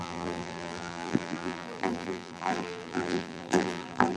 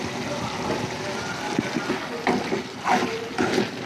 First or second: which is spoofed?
first